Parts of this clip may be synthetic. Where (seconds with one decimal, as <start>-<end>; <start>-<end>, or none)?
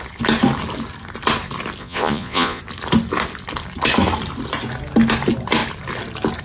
1.8-2.6